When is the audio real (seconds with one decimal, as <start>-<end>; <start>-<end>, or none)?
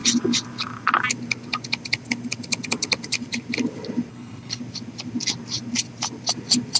0.0-4.1; 4.6-6.8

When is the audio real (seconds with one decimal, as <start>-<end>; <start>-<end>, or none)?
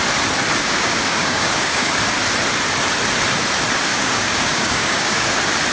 0.0-0.6; 1.9-3.9; 5.3-5.7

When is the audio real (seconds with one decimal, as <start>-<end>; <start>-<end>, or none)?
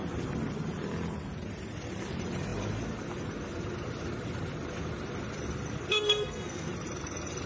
0.0-5.9; 6.7-7.5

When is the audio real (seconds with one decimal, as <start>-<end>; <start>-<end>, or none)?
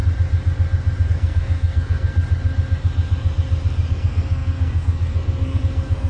0.0-1.1; 2.2-3.9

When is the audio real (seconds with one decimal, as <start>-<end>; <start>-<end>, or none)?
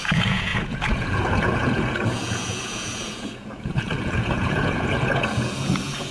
none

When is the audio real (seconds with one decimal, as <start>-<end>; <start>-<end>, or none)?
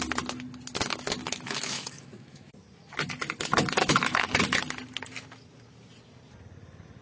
0.0-1.2; 2.5-3.8; 4.4-7.0